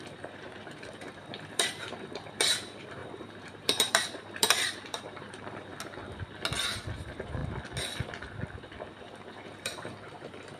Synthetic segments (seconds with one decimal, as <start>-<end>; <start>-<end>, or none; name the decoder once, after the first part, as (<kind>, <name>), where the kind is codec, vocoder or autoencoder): 0.0-5.7 (vocoder, BigVGAN v2); 6.9-7.4; 9.0-10.6

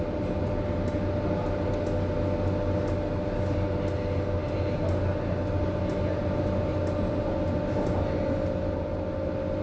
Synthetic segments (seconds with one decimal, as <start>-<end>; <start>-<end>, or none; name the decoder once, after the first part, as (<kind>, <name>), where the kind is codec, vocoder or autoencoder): none